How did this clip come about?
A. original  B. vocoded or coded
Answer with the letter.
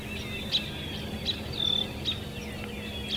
A